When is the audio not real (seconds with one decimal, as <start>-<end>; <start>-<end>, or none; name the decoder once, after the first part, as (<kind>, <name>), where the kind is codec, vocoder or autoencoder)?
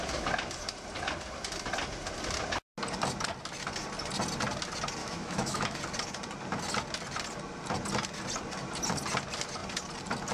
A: 5.0-5.8 (autoencoder, DAC-VAE)